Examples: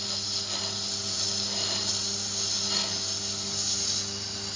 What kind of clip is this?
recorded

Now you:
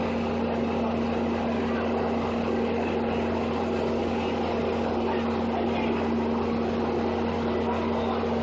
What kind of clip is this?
recorded